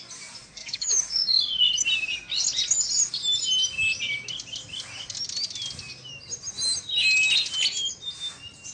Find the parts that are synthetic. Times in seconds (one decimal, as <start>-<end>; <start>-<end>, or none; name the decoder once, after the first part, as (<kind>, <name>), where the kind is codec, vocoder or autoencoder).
0.6-1.3 (autoencoder, DAC-VAE)